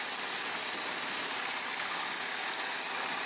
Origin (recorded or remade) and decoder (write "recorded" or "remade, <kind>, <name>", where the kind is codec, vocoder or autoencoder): recorded